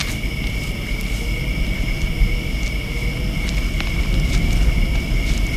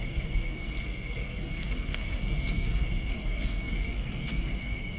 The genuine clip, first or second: first